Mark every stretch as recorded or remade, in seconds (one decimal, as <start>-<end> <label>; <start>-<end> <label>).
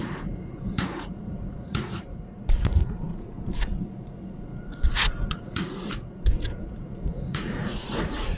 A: 0.0-8.4 remade